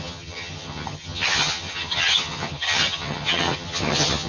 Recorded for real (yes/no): no